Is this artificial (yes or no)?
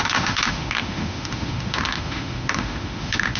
yes